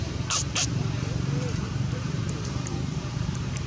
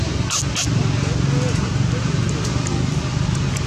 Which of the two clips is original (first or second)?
second